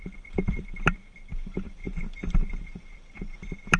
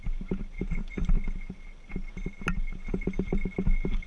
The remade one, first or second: first